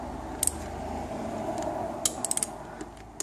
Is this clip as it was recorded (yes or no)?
yes